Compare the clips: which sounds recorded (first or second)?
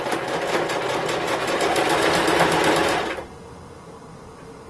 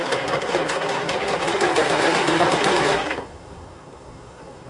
first